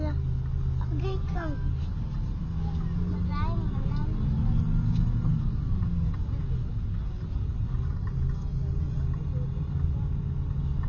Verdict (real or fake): real